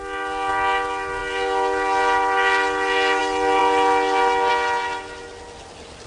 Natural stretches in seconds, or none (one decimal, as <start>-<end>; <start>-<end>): 0.0-6.1